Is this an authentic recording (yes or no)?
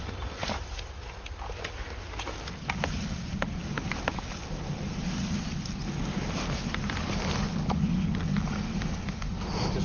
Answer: yes